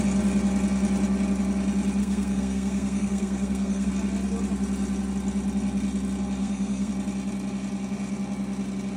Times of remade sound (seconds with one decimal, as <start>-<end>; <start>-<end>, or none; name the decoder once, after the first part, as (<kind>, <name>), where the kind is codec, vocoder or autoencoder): 2.0-3.9 (codec, SNAC); 6.4-6.9